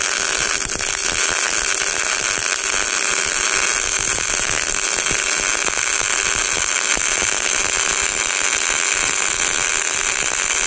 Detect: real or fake real